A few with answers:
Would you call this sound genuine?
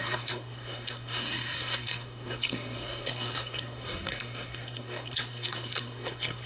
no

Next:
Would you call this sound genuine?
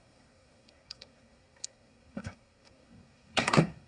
no